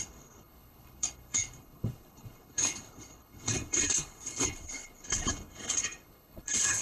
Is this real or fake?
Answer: fake